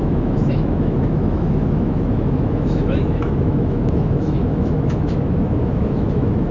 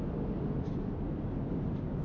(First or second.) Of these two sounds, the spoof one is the first